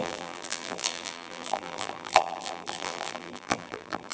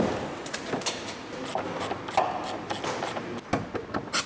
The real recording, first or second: second